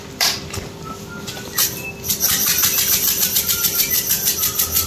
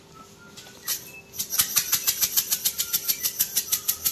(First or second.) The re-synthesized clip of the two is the first